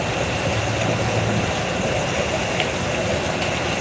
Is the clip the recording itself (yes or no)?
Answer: yes